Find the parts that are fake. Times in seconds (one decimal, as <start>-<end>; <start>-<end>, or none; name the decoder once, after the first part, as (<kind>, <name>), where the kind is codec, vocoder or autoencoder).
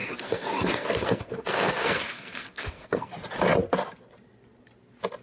0.0-3.1 (codec, SNAC)